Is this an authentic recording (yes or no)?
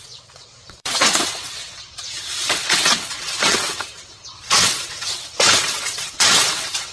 no